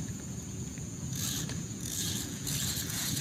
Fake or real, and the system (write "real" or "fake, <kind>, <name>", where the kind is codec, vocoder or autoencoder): fake, vocoder, Vocos